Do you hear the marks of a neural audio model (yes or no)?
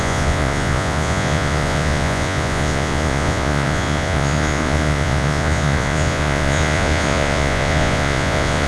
yes